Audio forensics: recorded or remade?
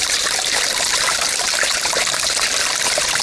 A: remade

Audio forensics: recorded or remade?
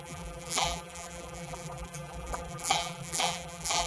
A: remade